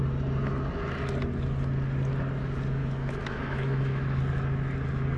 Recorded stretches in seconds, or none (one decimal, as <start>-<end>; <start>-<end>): 0.0-2.8; 4.2-5.2